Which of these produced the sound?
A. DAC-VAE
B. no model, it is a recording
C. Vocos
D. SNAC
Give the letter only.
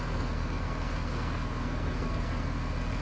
D